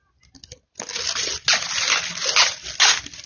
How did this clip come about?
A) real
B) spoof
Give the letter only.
A